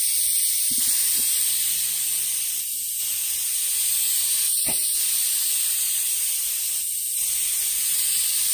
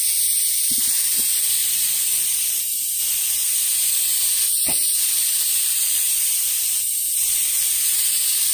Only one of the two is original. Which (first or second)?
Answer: first